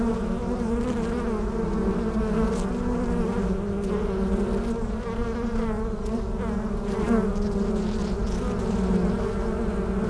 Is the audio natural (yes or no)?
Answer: yes